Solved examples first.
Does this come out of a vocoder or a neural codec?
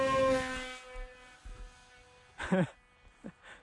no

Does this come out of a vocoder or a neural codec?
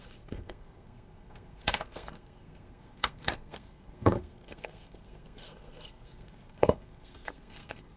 yes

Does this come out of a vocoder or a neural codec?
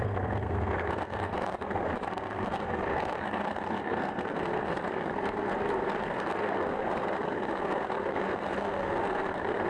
yes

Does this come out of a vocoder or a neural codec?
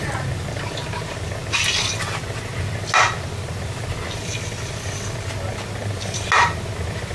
no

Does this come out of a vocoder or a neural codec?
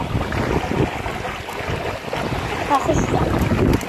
no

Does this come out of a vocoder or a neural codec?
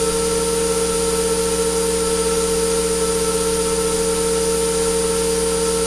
no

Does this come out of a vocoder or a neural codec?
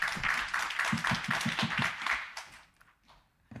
no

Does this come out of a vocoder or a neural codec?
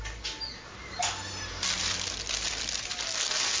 no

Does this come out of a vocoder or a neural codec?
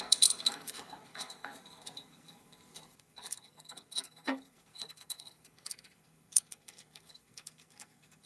yes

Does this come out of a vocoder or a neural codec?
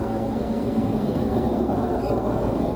yes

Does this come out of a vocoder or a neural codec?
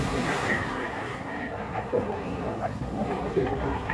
yes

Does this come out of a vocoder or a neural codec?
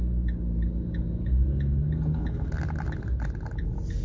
no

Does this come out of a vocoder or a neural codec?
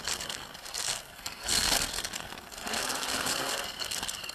yes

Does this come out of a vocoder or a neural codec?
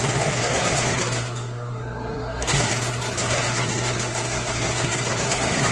yes